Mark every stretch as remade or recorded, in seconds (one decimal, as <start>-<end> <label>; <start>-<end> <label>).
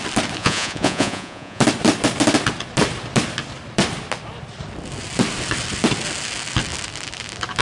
0.0-0.4 recorded; 0.4-1.6 remade; 1.6-7.6 recorded